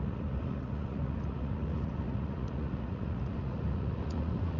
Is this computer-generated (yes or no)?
yes